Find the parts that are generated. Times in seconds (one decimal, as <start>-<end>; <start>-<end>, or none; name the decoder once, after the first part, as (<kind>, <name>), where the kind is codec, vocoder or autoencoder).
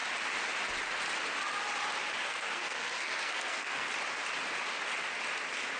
2.2-3.9 (codec, SNAC)